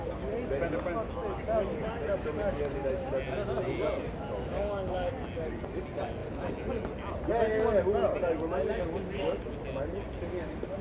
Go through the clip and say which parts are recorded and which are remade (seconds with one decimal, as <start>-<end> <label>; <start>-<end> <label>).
0.0-4.5 recorded; 4.5-5.1 remade; 5.1-10.8 recorded